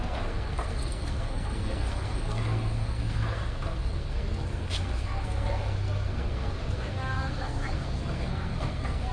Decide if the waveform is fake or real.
fake